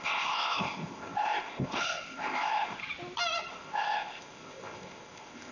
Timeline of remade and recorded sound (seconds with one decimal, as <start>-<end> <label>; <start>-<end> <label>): 0.0-2.8 remade; 2.8-3.5 recorded; 3.5-5.5 remade